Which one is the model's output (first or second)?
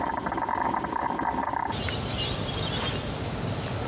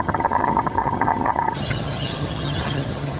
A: second